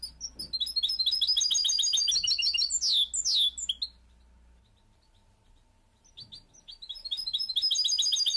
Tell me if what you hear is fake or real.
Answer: real